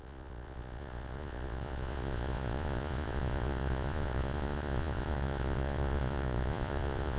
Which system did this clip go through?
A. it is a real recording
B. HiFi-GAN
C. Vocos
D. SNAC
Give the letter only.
C